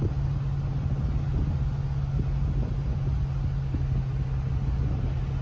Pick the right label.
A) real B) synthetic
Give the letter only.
A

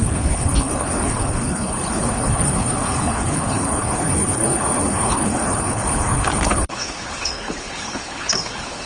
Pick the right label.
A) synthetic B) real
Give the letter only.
A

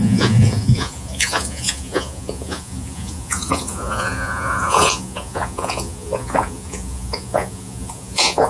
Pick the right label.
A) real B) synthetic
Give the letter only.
B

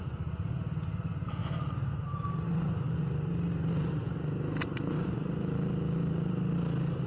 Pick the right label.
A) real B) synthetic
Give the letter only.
A